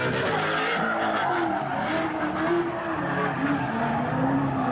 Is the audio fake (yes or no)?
no